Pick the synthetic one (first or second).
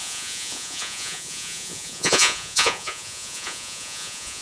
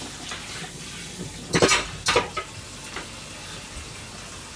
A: first